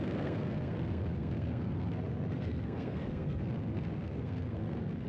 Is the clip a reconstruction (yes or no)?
yes